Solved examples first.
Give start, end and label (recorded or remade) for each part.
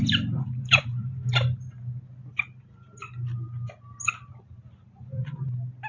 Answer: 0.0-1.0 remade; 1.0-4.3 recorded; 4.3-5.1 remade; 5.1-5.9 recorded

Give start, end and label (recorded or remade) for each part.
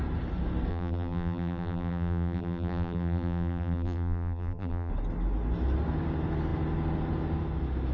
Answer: 0.0-0.7 recorded; 0.7-4.9 remade; 4.9-7.9 recorded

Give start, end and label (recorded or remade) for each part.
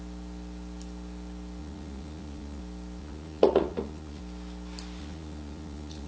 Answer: 0.0-1.6 recorded; 1.6-2.6 remade; 2.6-3.0 recorded; 3.0-4.2 remade; 4.2-5.0 recorded; 5.0-6.1 remade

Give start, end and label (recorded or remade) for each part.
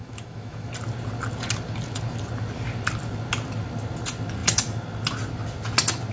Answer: 0.0-0.7 remade; 0.7-6.1 recorded